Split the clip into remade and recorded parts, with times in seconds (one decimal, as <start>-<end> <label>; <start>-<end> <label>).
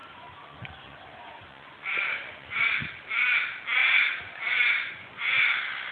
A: 0.0-2.7 remade; 2.7-3.8 recorded; 3.8-5.4 remade; 5.4-5.9 recorded